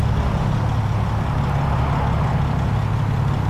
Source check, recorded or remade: recorded